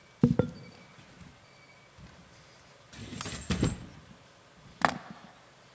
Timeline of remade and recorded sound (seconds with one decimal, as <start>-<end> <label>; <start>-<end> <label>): 0.0-5.7 recorded